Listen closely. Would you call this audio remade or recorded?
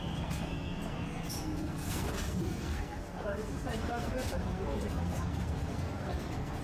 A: remade